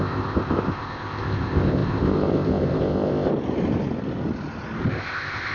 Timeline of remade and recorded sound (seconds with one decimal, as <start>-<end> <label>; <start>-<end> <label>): 0.0-3.3 remade; 3.3-4.9 recorded; 4.9-5.5 remade